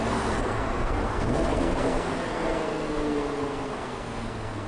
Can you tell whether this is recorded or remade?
remade